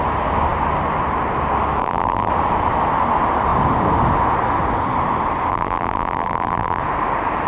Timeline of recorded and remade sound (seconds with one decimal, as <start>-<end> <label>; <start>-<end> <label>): 0.0-1.8 recorded; 1.8-2.3 remade; 2.3-5.5 recorded; 5.5-6.8 remade; 6.8-7.5 recorded